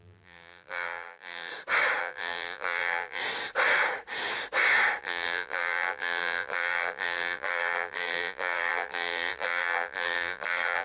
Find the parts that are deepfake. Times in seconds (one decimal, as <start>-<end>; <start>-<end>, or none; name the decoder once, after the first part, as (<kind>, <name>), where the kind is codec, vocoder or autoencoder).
0.0-1.5 (vocoder, BigVGAN v2); 2.0-3.2; 5.0-10.8